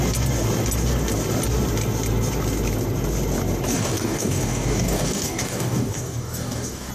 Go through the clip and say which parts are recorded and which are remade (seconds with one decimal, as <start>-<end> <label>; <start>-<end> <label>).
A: 0.0-3.7 recorded; 3.7-6.9 remade